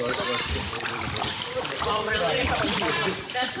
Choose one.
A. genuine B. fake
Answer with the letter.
B